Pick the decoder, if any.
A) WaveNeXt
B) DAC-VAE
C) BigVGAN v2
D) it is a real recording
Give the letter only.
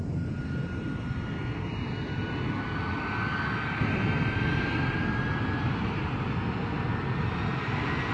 D